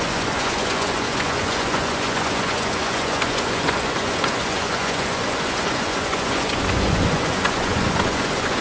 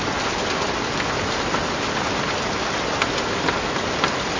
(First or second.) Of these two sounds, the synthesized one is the first